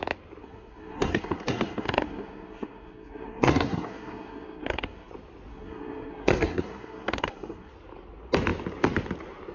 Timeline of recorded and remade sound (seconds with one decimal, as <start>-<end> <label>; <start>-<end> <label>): 0.0-0.4 recorded; 0.4-5.1 remade; 5.1-5.5 recorded; 5.5-7.7 remade; 7.7-9.5 recorded